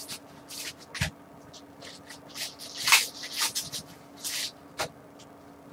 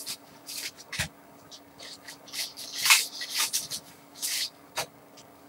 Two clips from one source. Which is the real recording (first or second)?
first